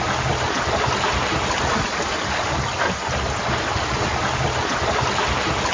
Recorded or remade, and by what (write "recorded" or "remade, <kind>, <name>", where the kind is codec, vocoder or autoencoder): recorded